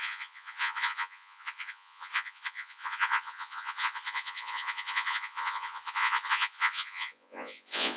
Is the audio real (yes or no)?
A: no